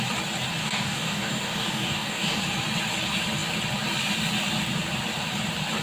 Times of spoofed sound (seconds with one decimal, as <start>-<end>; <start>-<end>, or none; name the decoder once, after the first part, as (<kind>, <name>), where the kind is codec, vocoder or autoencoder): 0.6-2.4 (codec, DAC)

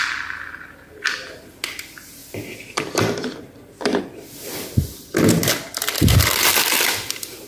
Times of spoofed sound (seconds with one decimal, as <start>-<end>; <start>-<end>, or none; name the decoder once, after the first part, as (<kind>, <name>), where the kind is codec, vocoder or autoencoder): 2.2-4.0 (vocoder, BigVGAN v2)

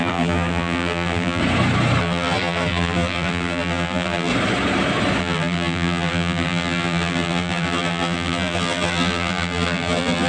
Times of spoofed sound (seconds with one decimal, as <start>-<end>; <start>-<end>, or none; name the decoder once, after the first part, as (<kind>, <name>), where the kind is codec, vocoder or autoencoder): 0.0-1.4 (vocoder, BigVGAN v2); 2.0-4.3; 5.2-10.3

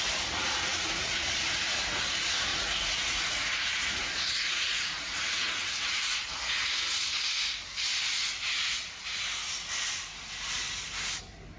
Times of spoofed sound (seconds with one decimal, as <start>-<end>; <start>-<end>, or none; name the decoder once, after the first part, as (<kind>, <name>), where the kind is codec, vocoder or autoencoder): 0.7-1.5 (vocoder, Vocos); 2.5-7.0

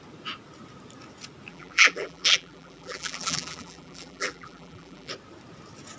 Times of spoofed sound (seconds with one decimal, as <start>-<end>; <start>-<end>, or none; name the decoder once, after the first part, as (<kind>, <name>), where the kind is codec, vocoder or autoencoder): 1.5-5.1 (vocoder, BigVGAN v2)

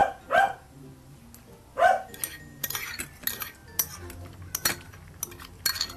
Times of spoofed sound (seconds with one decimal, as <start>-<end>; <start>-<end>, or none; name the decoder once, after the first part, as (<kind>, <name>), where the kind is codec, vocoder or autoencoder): none

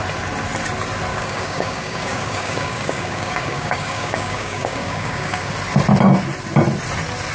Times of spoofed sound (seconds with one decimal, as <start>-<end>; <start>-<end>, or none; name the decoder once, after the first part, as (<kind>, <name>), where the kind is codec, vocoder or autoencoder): 1.1-5.5 (codec, DAC)

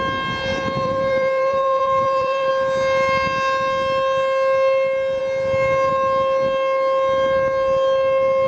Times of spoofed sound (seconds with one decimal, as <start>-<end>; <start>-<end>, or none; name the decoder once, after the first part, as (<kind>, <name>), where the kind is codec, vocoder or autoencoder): 0.5-2.5 (vocoder, BigVGAN v2)